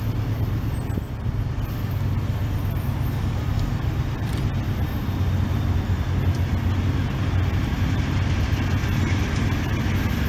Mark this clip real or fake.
real